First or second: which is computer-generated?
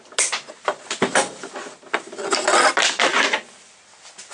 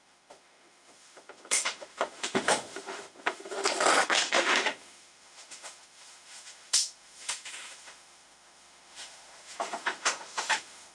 second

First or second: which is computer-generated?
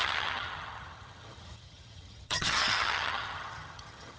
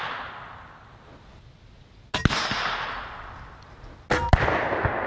first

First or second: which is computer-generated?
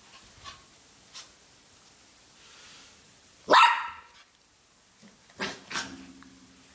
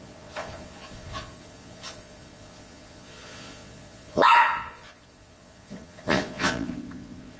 second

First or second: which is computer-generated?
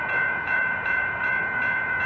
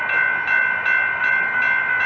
first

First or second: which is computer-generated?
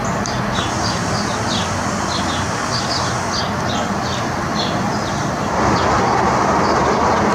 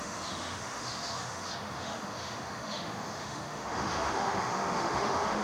second